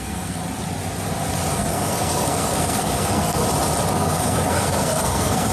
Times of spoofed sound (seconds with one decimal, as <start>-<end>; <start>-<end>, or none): 0.0-0.4; 1.5-3.4; 3.9-5.5